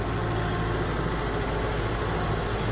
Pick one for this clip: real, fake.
real